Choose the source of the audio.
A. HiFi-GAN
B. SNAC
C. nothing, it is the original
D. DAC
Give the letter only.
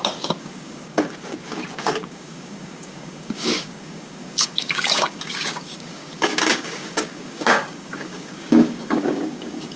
D